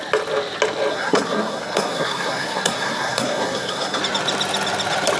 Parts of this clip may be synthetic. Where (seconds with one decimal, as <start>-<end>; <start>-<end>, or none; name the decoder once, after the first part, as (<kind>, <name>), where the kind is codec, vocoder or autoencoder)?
0.9-4.0 (codec, SNAC)